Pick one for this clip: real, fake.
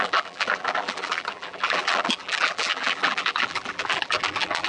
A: fake